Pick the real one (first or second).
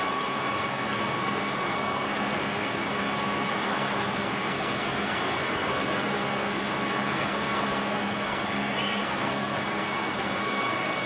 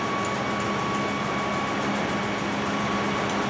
second